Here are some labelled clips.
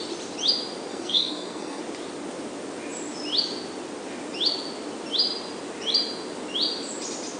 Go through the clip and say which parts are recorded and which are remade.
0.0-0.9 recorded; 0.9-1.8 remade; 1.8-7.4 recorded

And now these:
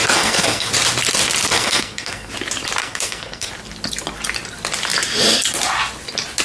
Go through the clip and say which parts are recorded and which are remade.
0.0-0.7 remade; 0.7-1.5 recorded; 1.5-2.3 remade; 2.3-2.8 recorded; 2.8-3.5 remade; 3.5-6.4 recorded

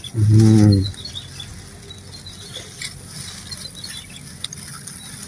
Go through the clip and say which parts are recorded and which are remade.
0.0-5.3 recorded